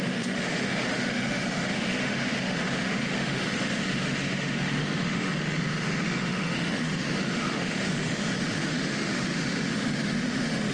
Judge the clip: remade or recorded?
remade